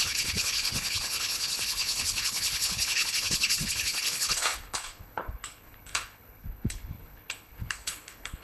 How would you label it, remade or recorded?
remade